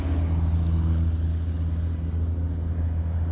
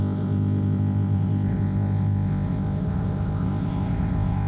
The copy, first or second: second